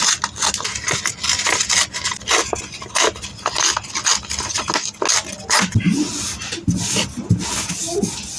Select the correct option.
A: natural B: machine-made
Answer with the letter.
A